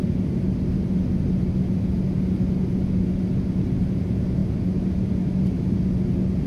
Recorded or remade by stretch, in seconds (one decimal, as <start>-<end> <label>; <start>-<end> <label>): 0.0-6.5 recorded